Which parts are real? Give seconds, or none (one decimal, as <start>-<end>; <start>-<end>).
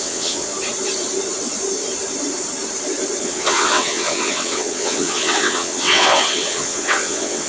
0.5-3.2